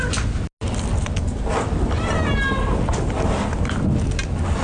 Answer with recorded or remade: recorded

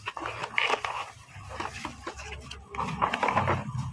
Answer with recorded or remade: recorded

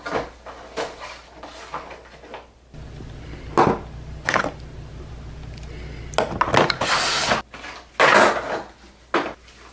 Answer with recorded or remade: recorded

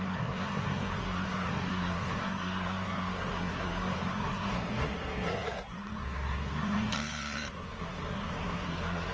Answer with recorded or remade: remade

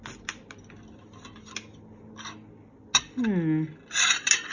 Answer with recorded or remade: recorded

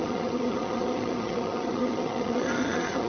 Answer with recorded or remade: remade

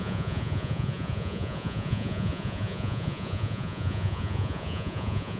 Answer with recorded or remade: remade